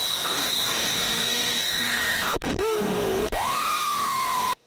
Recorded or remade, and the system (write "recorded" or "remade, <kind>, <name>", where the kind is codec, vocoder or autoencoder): remade, codec, DAC